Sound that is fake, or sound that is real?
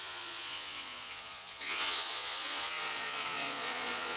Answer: fake